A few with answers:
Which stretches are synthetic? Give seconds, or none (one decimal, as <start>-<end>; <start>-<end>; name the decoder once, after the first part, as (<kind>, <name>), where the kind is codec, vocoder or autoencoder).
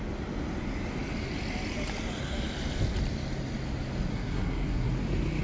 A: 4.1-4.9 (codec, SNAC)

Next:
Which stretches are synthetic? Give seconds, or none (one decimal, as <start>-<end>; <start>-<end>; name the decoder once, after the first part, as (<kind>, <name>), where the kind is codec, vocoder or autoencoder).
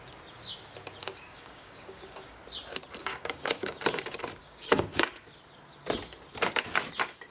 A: 1.0-2.4 (codec, DAC); 3.0-3.8; 4.4-5.1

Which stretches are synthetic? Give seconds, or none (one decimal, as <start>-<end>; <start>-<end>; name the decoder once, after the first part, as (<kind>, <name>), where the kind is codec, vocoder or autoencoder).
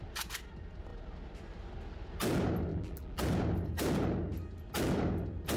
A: 2.7-3.2 (vocoder, BigVGAN v2)